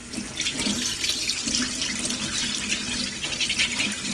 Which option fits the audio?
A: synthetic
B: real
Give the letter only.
B